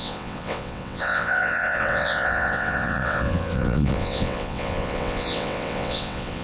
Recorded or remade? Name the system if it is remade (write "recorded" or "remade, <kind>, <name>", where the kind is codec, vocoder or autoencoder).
remade, vocoder, WaveNeXt